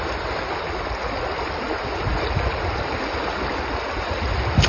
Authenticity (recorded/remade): recorded